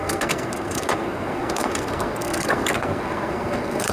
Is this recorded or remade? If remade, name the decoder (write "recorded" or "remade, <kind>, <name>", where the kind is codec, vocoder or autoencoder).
remade, codec, SNAC